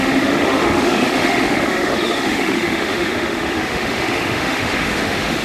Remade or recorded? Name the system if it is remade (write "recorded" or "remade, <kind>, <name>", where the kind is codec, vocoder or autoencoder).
remade, autoencoder, DAC-VAE